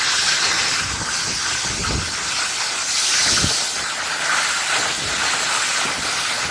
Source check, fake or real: real